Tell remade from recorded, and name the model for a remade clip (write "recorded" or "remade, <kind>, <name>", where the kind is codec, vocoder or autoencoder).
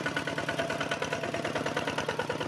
recorded